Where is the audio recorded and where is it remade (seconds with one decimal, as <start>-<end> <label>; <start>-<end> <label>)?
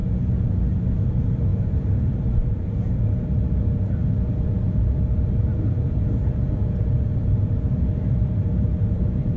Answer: 0.0-1.1 recorded; 1.1-9.4 remade